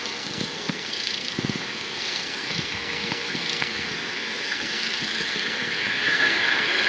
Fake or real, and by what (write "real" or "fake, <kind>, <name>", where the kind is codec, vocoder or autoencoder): fake, codec, SNAC